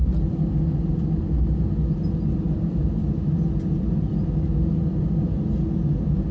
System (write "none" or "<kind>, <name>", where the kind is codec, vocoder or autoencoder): none